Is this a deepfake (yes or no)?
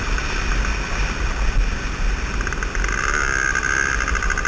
no